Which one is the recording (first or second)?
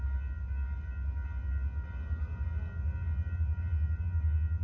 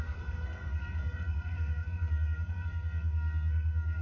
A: first